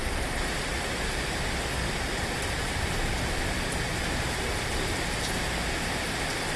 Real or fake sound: real